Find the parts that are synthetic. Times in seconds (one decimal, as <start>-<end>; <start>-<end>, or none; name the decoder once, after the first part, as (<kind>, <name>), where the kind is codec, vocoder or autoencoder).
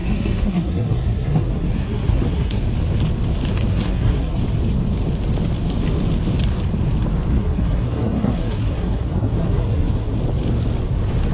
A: 0.0-2.6 (codec, SNAC); 3.7-4.4; 7.3-10.2